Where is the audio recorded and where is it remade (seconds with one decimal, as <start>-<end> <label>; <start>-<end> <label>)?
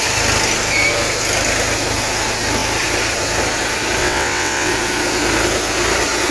0.0-4.0 recorded; 4.0-4.7 remade; 4.7-6.3 recorded